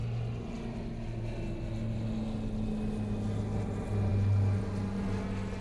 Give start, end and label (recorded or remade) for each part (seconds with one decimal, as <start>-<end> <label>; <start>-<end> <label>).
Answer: 0.0-5.6 recorded